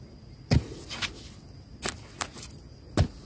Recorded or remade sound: recorded